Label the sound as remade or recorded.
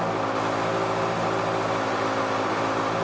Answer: remade